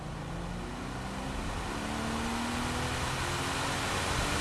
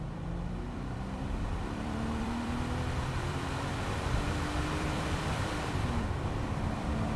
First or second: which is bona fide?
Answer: first